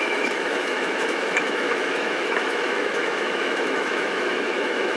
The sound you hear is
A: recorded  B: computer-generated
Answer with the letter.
B